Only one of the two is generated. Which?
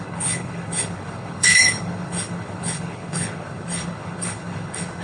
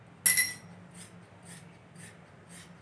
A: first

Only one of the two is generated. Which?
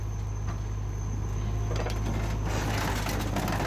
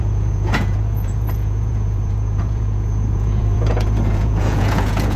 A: second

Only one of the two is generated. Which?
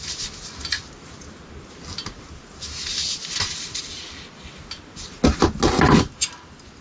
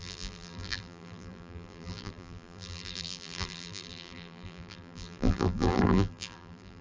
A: second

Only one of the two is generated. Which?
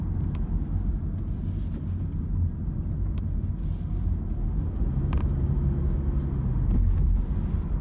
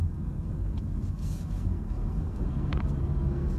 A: second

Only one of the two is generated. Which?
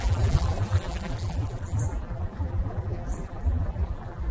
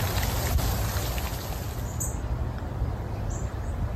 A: first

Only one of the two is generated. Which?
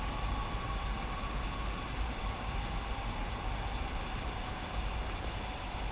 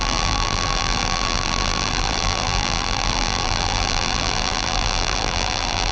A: second